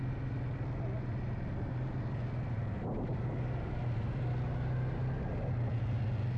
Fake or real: real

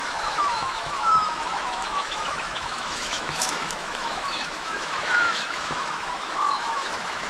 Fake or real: fake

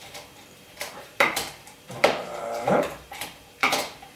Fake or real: fake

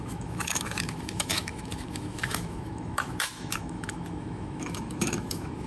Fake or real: fake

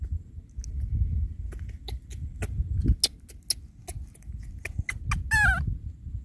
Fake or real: real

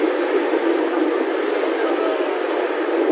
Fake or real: real